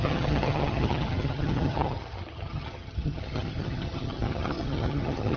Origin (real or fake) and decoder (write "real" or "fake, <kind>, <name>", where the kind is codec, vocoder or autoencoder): fake, vocoder, HiFi-GAN